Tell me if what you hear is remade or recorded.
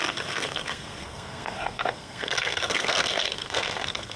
remade